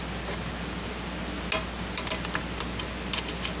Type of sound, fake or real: real